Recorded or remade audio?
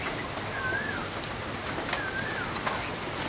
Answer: recorded